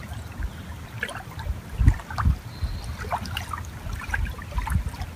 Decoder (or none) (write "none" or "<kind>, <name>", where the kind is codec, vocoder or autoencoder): none